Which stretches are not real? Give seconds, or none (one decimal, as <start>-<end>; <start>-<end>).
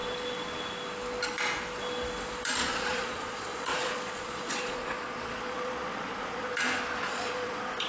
2.6-6.5; 7.1-7.9